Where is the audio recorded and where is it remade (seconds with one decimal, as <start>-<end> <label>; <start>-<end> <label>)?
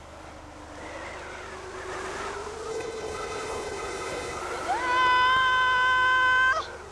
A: 0.0-2.7 recorded; 2.7-4.4 remade; 4.4-6.9 recorded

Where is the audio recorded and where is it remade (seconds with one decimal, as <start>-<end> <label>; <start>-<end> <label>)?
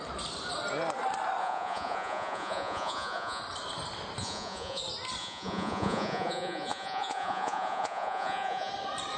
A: 0.0-1.4 recorded; 1.4-3.4 remade; 3.4-4.2 recorded; 4.2-4.8 remade; 4.8-5.2 recorded; 5.2-8.7 remade; 8.7-9.2 recorded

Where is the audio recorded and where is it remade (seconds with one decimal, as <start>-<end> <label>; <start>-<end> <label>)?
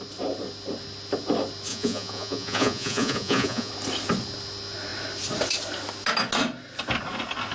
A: 0.0-1.7 recorded; 1.7-3.7 remade; 3.7-7.5 recorded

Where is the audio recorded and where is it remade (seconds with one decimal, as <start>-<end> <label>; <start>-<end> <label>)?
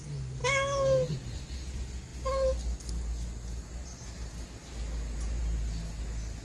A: 0.0-6.4 recorded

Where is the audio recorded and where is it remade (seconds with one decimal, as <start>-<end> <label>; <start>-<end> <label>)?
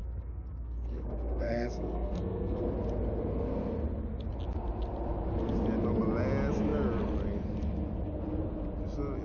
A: 0.0-2.6 remade; 2.6-9.2 recorded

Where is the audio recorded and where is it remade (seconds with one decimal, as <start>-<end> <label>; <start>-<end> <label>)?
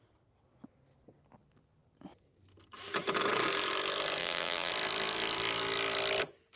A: 0.0-4.2 recorded; 4.2-4.7 remade; 4.7-6.6 recorded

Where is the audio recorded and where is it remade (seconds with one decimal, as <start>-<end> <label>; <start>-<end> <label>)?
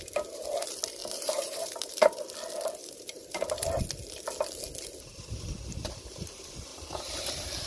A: 0.0-1.0 recorded; 1.0-2.2 remade; 2.2-2.8 recorded; 2.8-3.5 remade; 3.5-6.7 recorded; 6.7-7.3 remade; 7.3-7.7 recorded